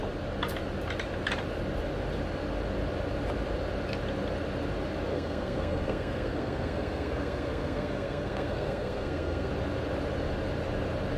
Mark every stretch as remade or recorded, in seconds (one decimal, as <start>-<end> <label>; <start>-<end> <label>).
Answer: 0.0-5.1 recorded; 5.1-9.5 remade; 9.5-11.2 recorded